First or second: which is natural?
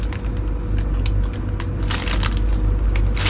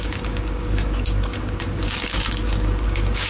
first